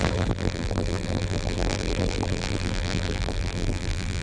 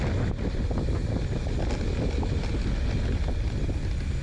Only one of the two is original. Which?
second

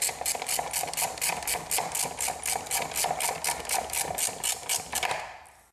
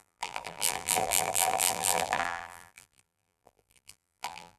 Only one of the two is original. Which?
first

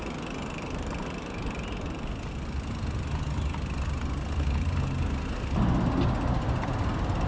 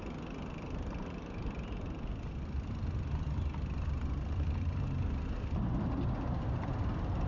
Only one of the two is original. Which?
first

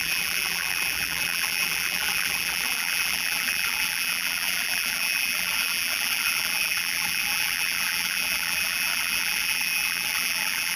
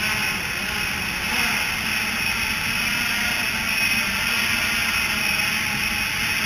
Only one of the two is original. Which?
second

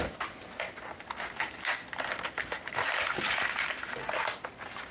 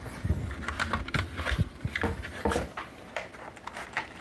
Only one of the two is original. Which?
first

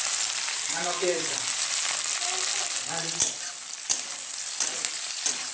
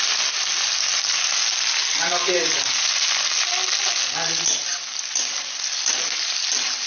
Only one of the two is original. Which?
second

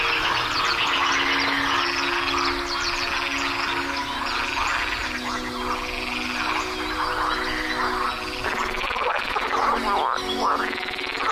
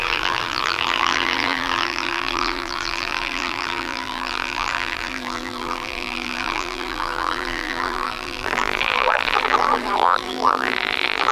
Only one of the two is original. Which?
first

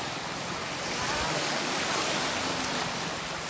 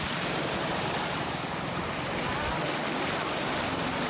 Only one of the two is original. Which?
first